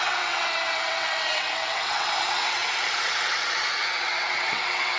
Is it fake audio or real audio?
fake